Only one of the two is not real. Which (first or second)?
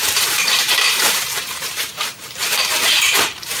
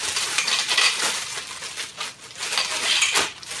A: first